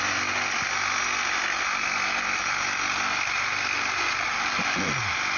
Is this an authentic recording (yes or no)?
yes